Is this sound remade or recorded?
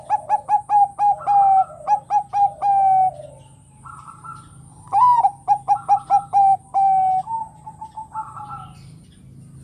recorded